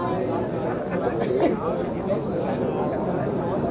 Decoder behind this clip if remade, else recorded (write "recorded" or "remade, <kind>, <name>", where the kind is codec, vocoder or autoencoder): recorded